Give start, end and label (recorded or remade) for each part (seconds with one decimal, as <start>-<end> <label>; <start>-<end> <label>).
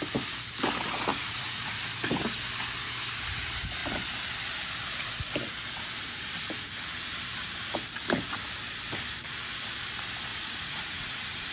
0.0-1.1 recorded; 1.1-1.8 remade; 1.8-10.3 recorded; 10.3-11.5 remade